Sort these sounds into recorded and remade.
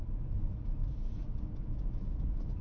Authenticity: remade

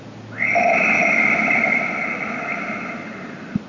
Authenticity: recorded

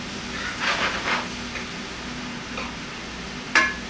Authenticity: recorded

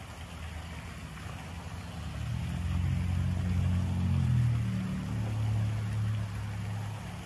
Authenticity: recorded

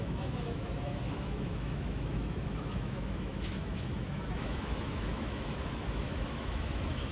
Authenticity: remade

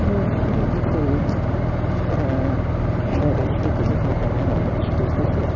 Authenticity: recorded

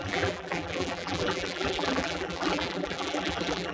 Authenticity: remade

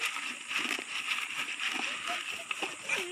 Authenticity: recorded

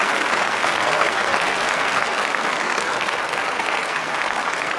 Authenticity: remade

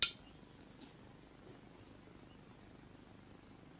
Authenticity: recorded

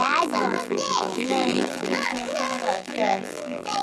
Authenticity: remade